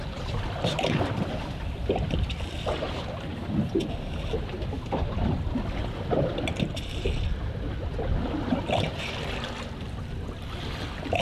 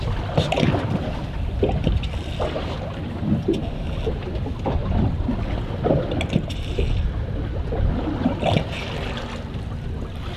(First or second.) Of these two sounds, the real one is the second